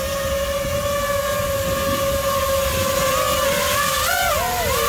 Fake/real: real